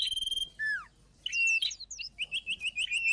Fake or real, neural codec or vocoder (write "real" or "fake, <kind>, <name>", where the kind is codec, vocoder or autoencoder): real